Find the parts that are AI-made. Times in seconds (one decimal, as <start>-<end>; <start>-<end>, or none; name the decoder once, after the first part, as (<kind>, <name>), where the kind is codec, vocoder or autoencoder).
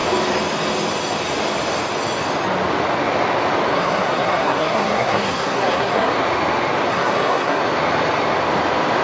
3.7-6.1 (codec, SNAC); 6.9-7.6